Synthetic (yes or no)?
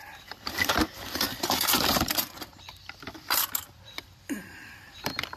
yes